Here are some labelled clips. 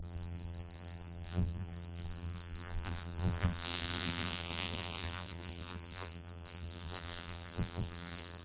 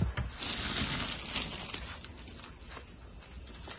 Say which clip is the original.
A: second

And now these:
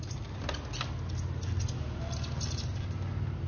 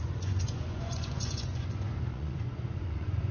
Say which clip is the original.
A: first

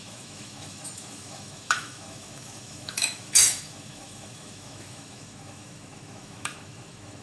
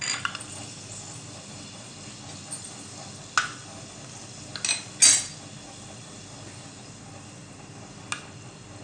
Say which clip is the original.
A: second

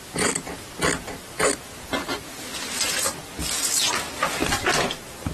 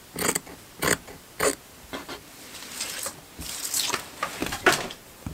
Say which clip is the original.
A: first